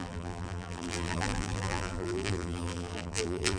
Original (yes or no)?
no